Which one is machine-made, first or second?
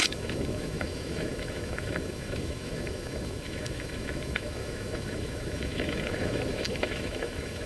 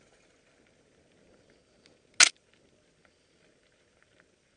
first